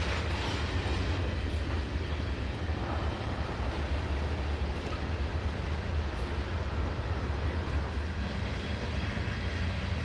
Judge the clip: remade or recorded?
recorded